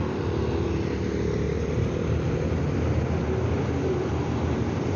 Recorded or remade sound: recorded